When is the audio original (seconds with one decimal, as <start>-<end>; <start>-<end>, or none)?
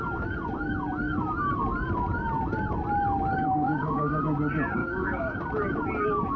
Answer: 0.0-3.3; 4.2-4.8; 5.5-6.4